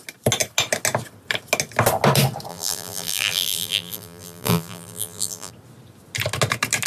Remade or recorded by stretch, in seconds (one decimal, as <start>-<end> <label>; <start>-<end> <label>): 0.0-2.5 recorded; 2.5-5.5 remade; 5.5-6.9 recorded